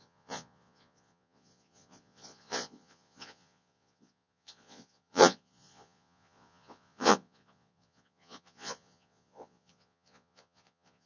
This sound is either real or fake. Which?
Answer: fake